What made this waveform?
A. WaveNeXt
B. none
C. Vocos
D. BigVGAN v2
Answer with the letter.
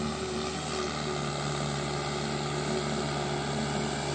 B